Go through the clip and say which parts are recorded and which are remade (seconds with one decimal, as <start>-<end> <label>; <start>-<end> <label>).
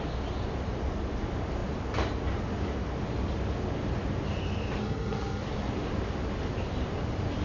0.0-4.8 recorded; 4.8-5.4 remade; 5.4-7.4 recorded